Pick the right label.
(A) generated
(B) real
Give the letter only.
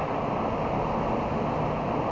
B